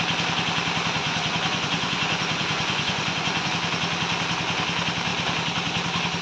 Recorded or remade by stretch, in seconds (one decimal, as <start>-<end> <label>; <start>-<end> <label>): 0.0-1.0 recorded; 1.0-3.5 remade; 3.5-6.2 recorded